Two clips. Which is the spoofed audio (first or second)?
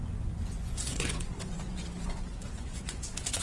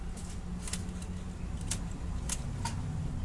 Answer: first